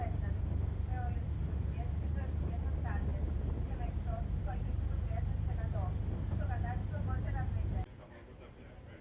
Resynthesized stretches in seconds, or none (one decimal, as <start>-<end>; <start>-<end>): none

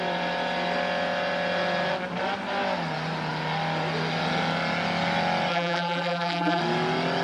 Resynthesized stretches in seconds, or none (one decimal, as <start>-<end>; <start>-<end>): 5.5-6.6

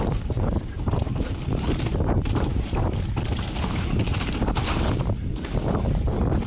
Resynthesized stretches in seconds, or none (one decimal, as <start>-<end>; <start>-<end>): 0.0-6.5

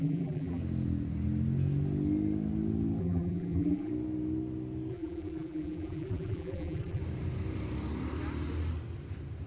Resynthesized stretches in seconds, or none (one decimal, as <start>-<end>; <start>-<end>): 0.0-0.6; 3.0-3.9; 4.9-7.0

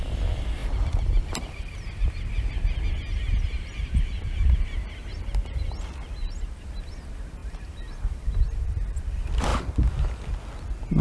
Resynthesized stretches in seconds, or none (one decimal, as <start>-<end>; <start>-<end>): 0.6-2.5; 7.4-9.0

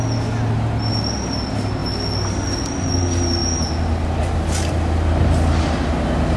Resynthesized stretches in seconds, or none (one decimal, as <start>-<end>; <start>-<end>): none

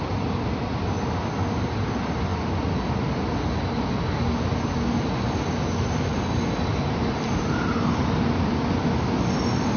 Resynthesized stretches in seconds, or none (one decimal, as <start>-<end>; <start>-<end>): 6.7-7.5

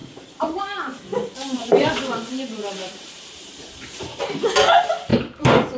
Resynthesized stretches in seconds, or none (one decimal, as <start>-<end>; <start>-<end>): 0.0-0.6; 1.1-4.3; 5.1-5.8